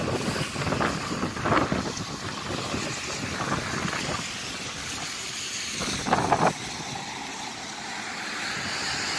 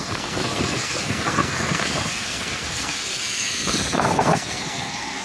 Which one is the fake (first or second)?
second